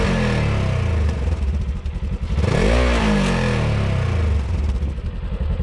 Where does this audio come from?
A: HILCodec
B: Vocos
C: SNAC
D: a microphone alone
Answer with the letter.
D